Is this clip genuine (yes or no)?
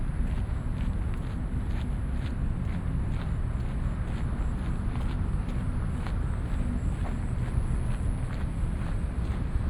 yes